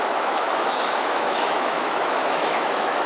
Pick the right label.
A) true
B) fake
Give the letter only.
B